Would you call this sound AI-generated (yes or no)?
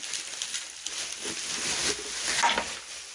no